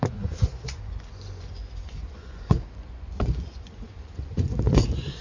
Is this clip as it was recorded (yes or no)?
no